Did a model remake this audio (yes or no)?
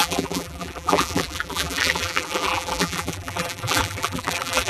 yes